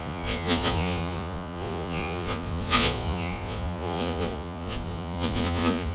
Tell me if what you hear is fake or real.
fake